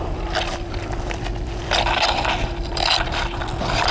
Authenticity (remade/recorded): recorded